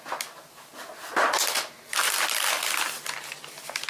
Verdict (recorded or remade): recorded